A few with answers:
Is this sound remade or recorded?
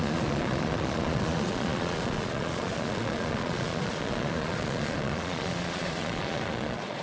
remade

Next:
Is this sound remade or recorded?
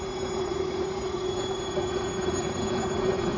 remade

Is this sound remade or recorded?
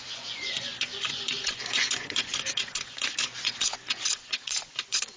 remade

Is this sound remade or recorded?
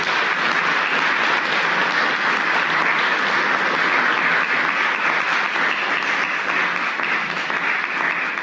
recorded